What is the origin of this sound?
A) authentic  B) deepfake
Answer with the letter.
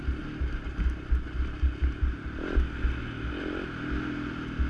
A